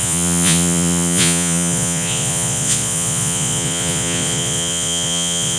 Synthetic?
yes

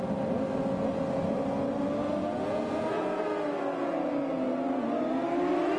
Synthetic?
no